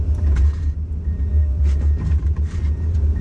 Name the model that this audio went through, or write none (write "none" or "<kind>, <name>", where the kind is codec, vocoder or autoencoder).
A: none